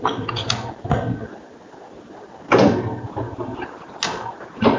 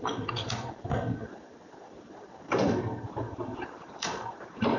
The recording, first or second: first